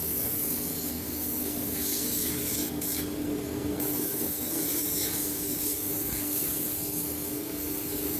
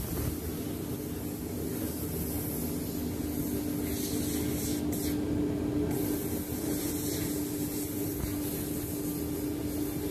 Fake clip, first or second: first